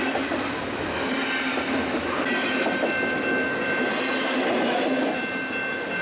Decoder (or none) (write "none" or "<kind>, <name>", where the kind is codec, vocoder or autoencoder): none